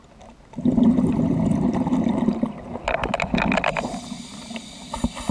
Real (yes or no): yes